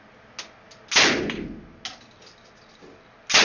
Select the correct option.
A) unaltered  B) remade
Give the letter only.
A